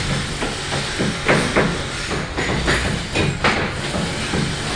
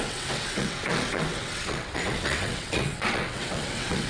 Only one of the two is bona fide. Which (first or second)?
first